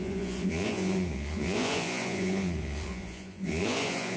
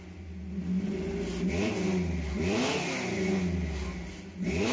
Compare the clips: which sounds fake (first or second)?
first